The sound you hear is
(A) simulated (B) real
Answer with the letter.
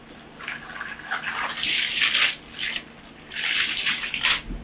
B